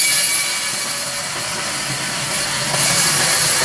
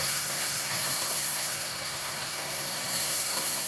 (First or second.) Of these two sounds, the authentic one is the first